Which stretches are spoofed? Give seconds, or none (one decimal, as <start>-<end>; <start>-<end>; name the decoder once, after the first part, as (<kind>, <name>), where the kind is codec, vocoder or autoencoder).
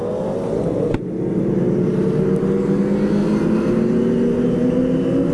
none